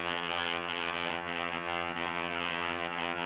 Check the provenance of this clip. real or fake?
fake